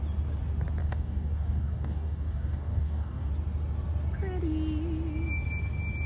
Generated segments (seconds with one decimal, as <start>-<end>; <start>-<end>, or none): 0.8-3.3